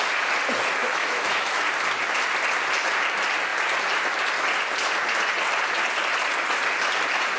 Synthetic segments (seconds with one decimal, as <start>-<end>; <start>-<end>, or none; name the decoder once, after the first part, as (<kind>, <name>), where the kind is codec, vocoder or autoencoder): 0.8-1.6 (autoencoder, DAC-VAE)